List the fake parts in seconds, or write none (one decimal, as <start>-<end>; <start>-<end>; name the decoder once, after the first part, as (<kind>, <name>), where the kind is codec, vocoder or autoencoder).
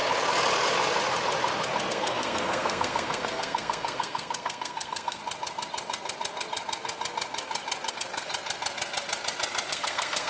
1.9-5.2 (codec, SNAC); 7.9-8.3; 9.7-10.3